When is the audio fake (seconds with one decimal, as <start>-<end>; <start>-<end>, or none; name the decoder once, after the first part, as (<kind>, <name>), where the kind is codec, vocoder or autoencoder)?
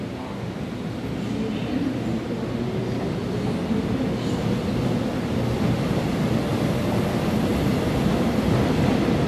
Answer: none